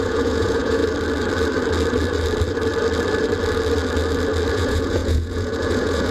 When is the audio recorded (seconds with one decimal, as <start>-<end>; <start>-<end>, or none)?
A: 0.8-4.5